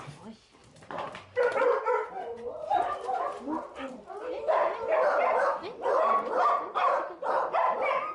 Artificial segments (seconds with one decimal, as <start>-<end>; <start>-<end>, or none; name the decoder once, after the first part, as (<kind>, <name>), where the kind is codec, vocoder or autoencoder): 0.6-1.8 (vocoder, BigVGAN v2); 4.9-5.5